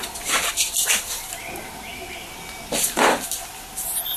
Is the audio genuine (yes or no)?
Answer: yes